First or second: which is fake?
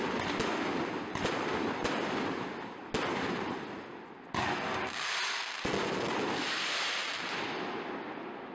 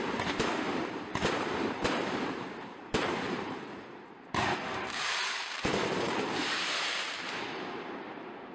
second